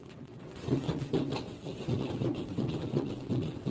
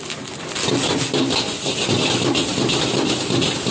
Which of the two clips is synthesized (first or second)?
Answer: first